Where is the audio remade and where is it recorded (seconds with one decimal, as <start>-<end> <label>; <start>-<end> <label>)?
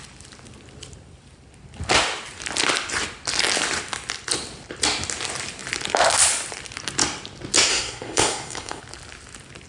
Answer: 0.0-7.7 recorded; 7.7-8.8 remade; 8.8-9.7 recorded